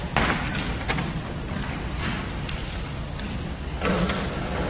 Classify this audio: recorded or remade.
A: remade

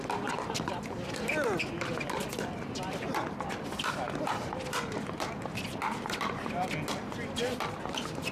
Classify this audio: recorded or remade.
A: recorded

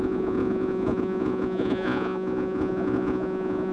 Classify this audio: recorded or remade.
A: remade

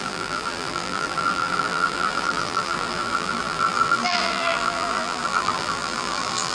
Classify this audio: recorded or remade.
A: remade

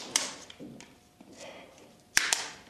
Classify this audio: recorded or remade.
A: recorded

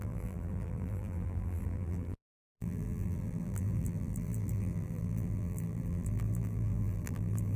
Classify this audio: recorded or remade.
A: remade